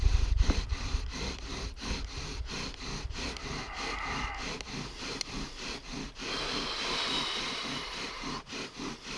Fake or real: real